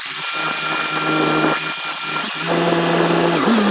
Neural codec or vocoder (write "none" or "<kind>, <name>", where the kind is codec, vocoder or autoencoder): none